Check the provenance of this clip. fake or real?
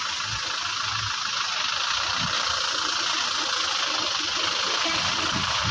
real